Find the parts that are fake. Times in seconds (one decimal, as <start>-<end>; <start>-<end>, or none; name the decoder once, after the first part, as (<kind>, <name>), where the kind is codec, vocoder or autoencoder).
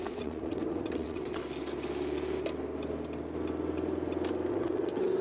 0.0-1.4 (vocoder, WaveNeXt); 4.5-5.2